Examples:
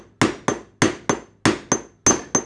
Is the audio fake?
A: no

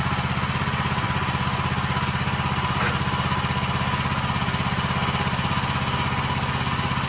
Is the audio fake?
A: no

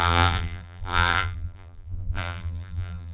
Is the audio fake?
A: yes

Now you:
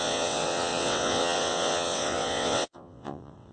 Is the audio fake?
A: yes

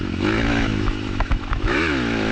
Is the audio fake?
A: yes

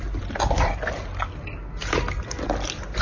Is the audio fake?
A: no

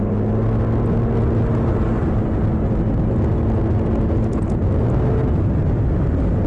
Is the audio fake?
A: no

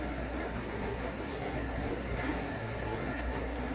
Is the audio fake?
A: yes